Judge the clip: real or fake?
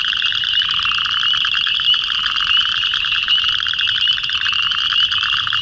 real